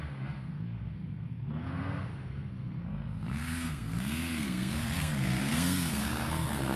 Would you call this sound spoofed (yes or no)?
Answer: yes